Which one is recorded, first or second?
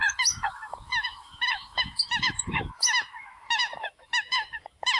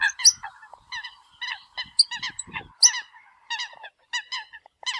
second